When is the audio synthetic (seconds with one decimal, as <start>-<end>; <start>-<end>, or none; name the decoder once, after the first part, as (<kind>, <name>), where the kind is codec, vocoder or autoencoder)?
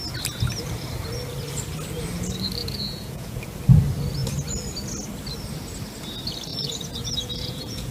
2.6-3.4 (vocoder, Vocos); 6.5-7.9